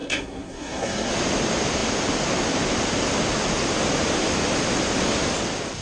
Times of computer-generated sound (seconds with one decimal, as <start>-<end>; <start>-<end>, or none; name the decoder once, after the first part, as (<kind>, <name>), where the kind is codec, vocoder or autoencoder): 0.0-1.1 (codec, SNAC)